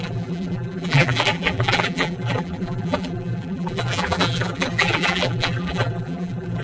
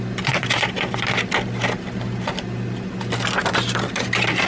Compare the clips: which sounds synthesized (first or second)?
first